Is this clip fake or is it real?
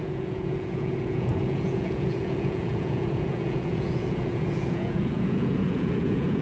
fake